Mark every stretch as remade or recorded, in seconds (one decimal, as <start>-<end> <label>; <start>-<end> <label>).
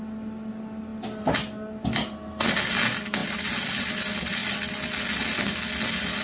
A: 0.0-6.2 recorded